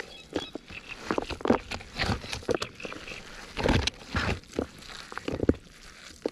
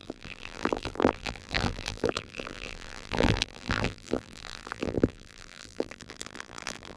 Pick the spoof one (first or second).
second